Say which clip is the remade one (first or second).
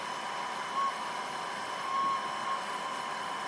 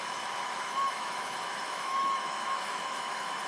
second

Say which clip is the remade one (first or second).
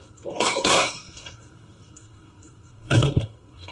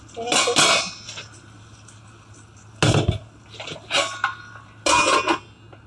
first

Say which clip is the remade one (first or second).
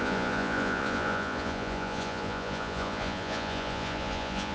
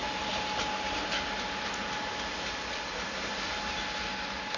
first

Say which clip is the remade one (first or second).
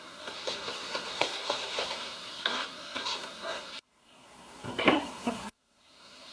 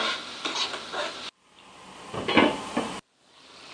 first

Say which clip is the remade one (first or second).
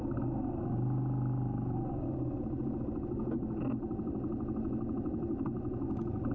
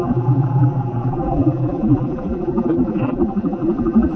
second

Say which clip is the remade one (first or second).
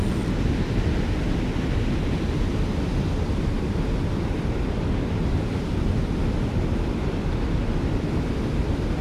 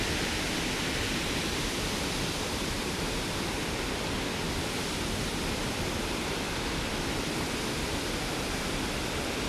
second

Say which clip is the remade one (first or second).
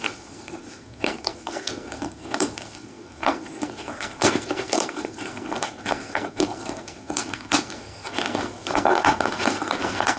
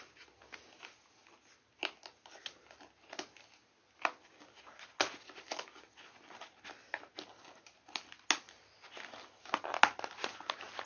first